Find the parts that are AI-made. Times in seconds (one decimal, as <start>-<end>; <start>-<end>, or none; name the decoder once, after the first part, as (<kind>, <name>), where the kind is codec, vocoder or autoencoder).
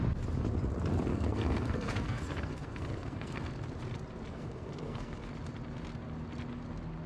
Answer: 1.1-3.5 (codec, SNAC); 4.3-5.3